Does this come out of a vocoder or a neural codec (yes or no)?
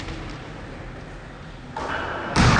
no